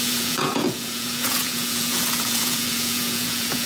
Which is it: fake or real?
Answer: fake